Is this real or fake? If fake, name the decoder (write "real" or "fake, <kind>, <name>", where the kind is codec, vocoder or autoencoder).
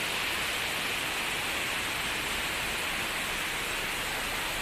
real